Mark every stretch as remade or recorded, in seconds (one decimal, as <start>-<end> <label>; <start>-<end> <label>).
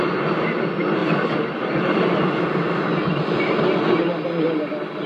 0.0-5.1 recorded